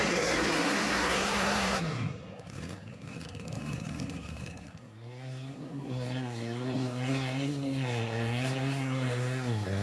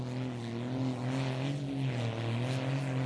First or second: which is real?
second